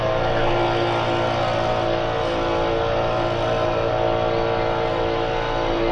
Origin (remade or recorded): recorded